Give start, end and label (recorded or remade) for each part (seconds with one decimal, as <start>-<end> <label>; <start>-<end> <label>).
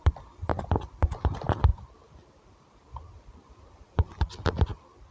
0.0-5.1 recorded